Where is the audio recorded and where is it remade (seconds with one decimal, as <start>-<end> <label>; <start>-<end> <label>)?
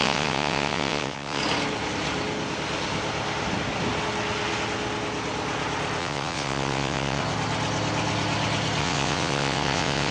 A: 0.0-1.4 remade; 1.4-6.0 recorded; 6.0-7.2 remade; 7.2-8.8 recorded; 8.8-10.1 remade